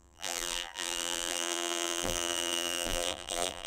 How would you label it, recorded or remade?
remade